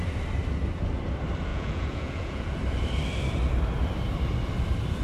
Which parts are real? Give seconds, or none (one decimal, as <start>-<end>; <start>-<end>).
0.0-1.5; 2.5-5.0